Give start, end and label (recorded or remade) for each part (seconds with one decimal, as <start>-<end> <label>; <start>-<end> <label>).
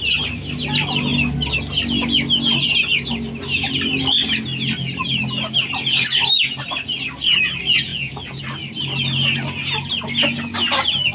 0.0-7.9 recorded; 7.9-8.4 remade; 8.4-11.1 recorded